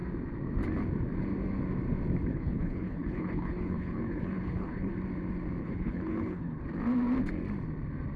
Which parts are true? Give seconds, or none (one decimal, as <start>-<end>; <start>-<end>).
0.0-2.3; 4.9-5.6; 6.6-8.2